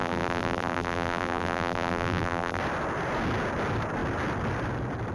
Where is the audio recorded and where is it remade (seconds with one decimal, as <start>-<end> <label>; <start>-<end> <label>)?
0.0-2.6 remade; 2.6-5.1 recorded